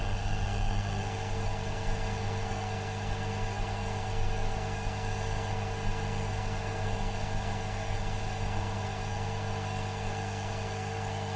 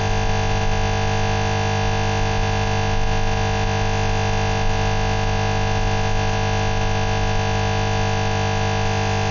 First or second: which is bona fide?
second